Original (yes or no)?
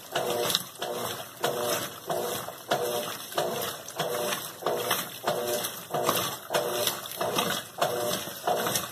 yes